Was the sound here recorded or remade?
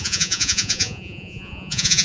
remade